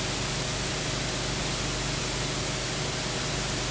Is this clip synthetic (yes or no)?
no